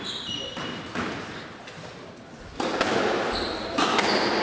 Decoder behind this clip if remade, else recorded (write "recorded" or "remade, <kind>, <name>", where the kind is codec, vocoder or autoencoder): recorded